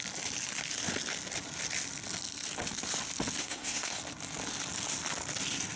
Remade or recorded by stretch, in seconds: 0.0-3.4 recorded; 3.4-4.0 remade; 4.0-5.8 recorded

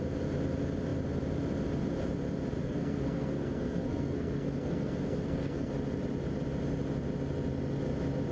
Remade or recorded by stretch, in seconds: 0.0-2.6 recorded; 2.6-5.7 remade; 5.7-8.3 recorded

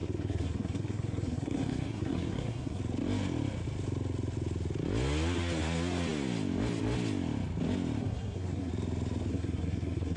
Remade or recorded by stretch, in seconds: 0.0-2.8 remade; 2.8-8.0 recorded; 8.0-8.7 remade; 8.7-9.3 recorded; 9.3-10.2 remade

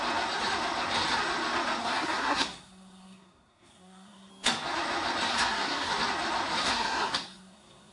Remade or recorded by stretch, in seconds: 0.0-1.8 recorded; 1.8-4.3 remade; 4.3-5.3 recorded; 5.3-5.9 remade; 5.9-6.6 recorded; 6.6-7.9 remade